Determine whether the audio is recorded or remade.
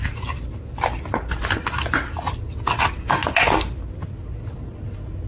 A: recorded